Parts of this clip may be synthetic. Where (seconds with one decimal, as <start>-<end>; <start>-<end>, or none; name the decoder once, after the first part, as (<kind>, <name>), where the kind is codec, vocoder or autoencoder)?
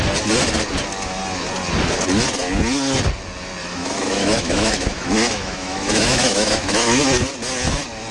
3.6-7.0 (autoencoder, DAC-VAE)